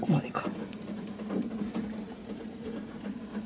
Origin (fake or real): fake